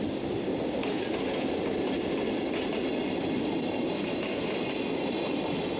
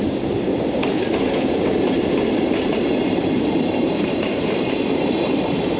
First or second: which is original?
first